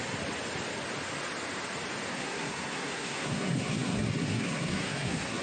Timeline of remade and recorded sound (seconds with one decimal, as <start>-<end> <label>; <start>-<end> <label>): 0.0-2.1 recorded; 2.1-5.4 remade